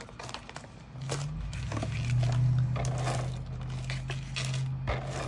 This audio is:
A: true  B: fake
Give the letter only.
A